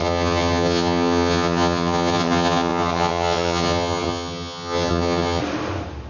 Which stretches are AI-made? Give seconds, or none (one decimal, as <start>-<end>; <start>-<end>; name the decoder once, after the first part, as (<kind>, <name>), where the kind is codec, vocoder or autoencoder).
0.0-5.4 (vocoder, HiFi-GAN)